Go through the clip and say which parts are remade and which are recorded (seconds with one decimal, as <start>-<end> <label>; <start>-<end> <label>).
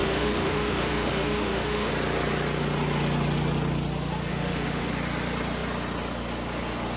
0.0-1.9 remade; 1.9-4.3 recorded; 4.3-4.9 remade; 4.9-7.0 recorded